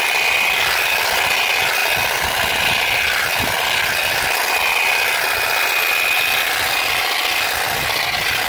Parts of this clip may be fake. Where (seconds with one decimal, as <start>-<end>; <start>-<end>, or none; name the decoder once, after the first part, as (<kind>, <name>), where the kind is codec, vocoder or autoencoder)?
none

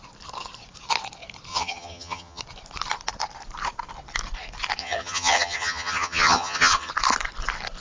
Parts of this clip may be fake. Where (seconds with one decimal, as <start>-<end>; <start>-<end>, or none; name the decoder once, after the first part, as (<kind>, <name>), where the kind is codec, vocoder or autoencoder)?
1.5-2.4 (vocoder, HiFi-GAN); 4.8-6.9

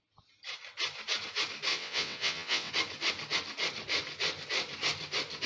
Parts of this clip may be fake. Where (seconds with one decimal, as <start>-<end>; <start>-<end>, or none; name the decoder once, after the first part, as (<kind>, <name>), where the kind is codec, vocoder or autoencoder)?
1.7-2.7 (vocoder, WaveNeXt)

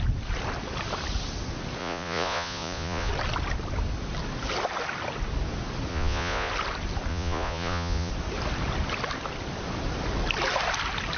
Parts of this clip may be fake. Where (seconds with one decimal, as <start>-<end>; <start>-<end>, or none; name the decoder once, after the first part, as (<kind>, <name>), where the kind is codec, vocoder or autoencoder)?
1.8-3.1 (vocoder, Vocos); 5.9-6.5; 7.1-8.1